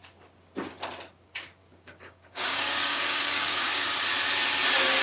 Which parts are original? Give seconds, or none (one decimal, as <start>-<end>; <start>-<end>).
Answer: 0.0-1.6; 3.9-5.0